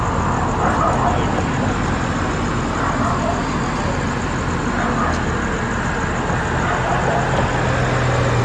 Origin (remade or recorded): recorded